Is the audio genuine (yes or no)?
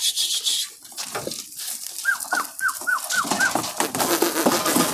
yes